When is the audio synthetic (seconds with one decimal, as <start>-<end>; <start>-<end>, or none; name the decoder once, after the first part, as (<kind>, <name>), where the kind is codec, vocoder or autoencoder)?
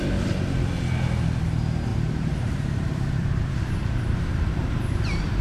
1.9-5.4 (vocoder, BigVGAN v2)